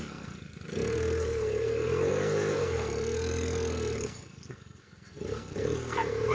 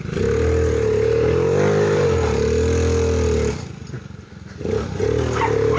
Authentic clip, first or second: second